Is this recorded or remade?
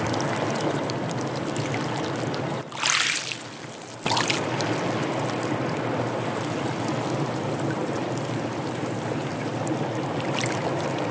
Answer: recorded